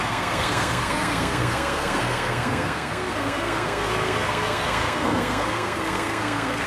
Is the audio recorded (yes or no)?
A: no